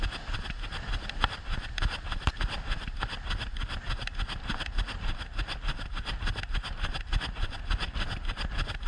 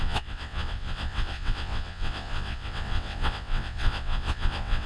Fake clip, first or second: second